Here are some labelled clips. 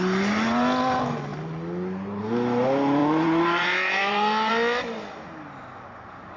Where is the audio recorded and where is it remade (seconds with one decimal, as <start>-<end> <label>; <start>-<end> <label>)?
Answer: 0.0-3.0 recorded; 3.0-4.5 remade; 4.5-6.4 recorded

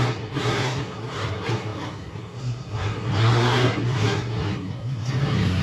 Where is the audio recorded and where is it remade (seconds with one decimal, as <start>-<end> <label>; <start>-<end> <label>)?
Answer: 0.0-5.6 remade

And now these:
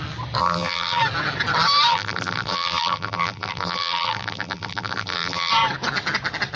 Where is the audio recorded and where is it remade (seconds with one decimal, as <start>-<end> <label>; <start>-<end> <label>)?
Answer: 0.0-0.4 recorded; 0.4-1.0 remade; 1.0-1.9 recorded; 1.9-5.5 remade; 5.5-6.6 recorded